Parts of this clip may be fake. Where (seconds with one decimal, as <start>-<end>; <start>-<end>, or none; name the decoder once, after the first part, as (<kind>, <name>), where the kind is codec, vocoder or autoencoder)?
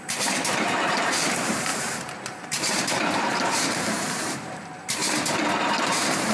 0.0-5.0 (vocoder, BigVGAN v2); 5.8-6.3